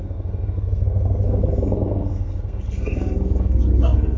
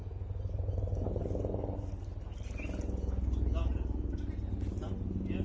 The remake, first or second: first